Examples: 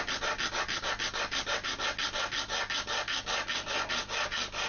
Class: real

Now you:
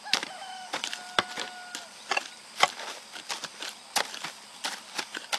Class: real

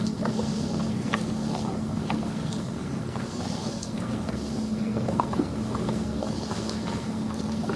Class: fake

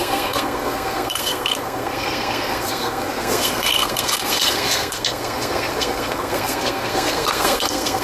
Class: fake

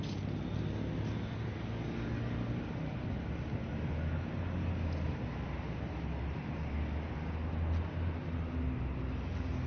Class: real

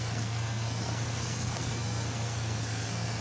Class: fake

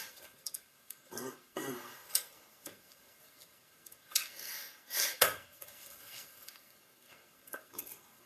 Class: fake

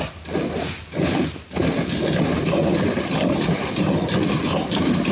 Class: real